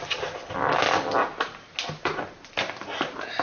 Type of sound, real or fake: real